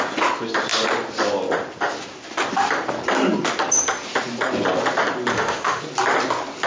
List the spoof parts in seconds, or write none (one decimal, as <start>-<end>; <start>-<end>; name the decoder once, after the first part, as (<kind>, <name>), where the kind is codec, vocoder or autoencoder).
5.3-5.8 (autoencoder, DAC-VAE)